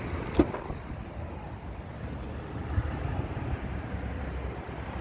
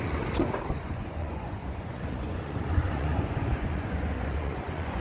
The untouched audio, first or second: first